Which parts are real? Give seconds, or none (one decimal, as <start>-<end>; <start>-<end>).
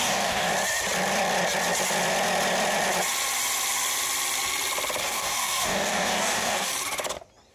0.5-5.0; 6.7-7.5